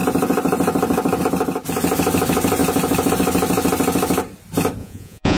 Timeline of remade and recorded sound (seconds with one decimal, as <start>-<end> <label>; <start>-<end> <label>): 0.0-4.8 recorded; 4.8-5.4 remade